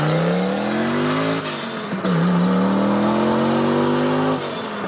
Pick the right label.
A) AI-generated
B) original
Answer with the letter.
B